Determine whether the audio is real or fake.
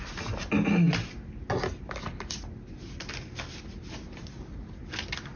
real